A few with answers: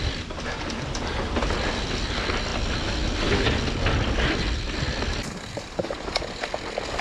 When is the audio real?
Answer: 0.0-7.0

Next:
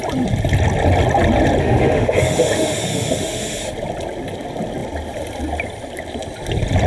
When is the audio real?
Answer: 0.0-1.6; 3.6-6.9